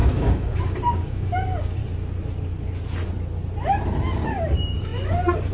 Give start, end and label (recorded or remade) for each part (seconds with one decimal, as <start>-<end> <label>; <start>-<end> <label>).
0.0-1.8 remade; 1.8-4.3 recorded; 4.3-5.5 remade